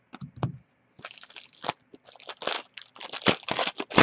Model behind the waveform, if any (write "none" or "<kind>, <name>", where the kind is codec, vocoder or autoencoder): none